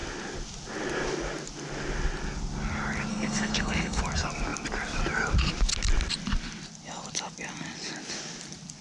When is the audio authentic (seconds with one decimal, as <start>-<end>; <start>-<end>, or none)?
0.0-3.1; 4.0-8.8